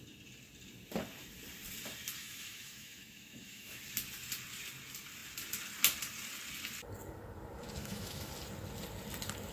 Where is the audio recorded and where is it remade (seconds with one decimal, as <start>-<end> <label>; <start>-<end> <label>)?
0.0-2.2 recorded; 2.2-3.8 remade; 3.8-7.8 recorded; 7.8-8.3 remade; 8.3-9.5 recorded